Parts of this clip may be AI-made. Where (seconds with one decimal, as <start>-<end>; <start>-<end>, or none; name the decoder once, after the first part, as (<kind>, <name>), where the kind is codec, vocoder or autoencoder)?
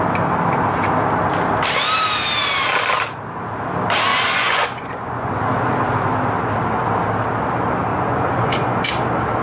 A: 4.1-5.3 (vocoder, Vocos); 7.9-8.8